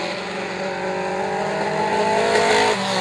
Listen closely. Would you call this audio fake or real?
real